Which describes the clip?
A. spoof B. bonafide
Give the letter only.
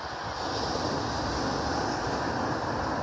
B